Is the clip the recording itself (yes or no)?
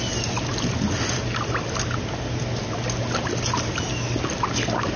yes